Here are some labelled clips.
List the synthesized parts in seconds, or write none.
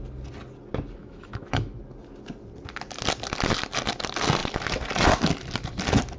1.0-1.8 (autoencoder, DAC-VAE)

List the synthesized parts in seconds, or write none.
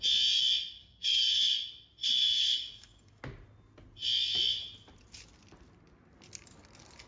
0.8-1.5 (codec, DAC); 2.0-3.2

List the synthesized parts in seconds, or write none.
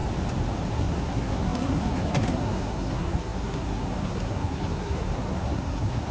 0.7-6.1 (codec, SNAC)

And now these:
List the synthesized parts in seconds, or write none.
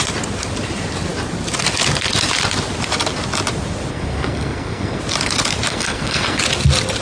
3.9-5.0 (codec, SNAC); 5.7-6.4